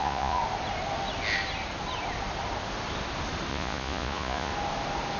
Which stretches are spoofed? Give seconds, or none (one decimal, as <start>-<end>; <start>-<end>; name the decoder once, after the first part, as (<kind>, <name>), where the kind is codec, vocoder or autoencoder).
0.0-0.4 (vocoder, Vocos); 3.5-4.5

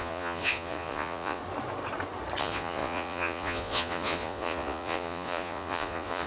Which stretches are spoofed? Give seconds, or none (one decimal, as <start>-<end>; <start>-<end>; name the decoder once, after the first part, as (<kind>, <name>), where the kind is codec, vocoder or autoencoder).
0.0-1.4 (vocoder, Vocos); 2.4-6.3